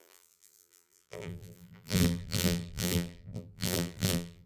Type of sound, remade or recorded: remade